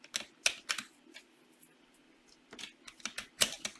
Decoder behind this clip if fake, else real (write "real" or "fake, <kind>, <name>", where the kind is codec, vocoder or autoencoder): real